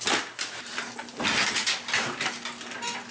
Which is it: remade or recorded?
recorded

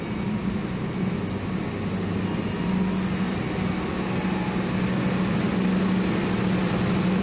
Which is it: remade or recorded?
recorded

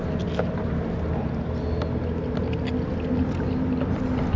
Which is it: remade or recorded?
recorded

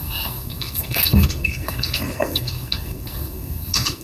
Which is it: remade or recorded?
remade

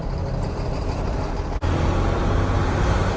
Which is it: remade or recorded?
recorded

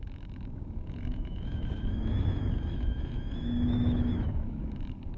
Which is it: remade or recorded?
remade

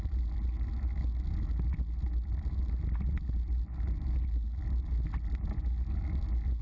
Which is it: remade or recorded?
recorded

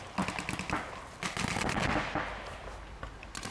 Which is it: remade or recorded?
recorded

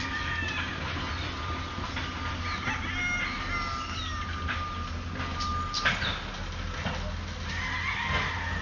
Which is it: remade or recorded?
recorded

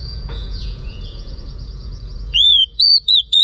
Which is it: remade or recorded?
remade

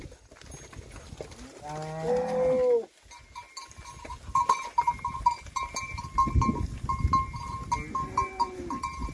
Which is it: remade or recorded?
recorded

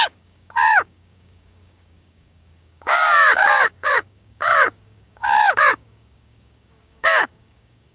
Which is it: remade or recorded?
remade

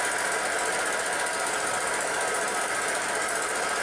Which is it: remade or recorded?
recorded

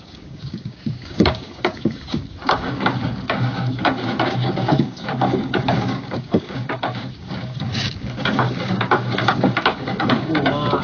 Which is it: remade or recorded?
remade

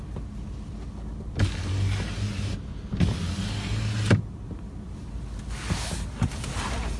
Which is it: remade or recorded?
recorded